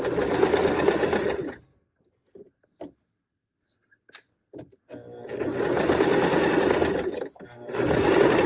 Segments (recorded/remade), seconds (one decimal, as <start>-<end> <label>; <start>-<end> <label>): 0.0-8.5 recorded